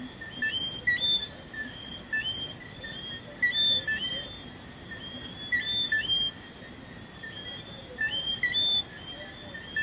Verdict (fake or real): real